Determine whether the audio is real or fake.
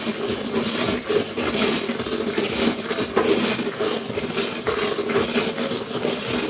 real